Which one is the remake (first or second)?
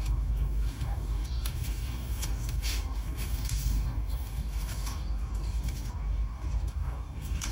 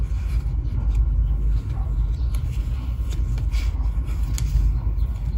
first